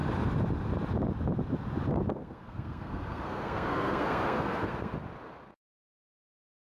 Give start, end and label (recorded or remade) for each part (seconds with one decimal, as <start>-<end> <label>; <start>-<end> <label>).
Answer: 0.0-2.1 recorded; 2.1-4.9 remade; 4.9-6.2 recorded; 6.2-6.7 remade